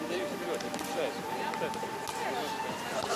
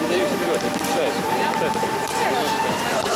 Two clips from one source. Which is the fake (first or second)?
second